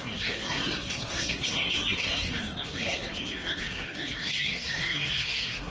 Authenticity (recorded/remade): remade